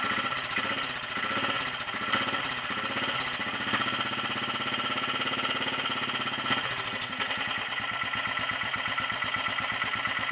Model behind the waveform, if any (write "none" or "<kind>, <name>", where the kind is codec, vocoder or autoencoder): none